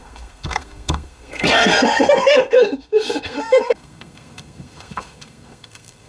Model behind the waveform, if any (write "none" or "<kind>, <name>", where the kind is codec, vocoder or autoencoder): codec, SNAC